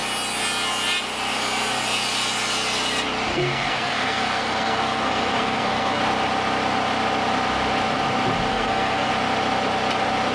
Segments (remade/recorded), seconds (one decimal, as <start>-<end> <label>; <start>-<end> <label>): 0.0-3.3 recorded; 3.3-6.0 remade; 6.0-8.5 recorded; 8.5-9.1 remade; 9.1-10.3 recorded